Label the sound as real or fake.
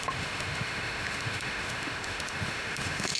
fake